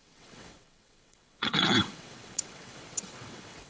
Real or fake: fake